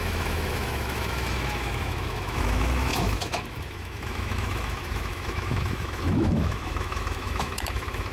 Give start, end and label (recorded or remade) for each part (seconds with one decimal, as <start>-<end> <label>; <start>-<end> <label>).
0.0-8.1 remade